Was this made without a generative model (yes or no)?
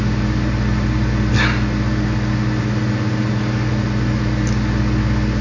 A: yes